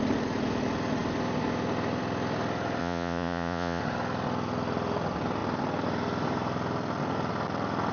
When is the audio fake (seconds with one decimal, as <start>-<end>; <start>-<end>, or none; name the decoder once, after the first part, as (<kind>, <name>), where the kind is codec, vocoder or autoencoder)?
2.8-3.8 (vocoder, Vocos)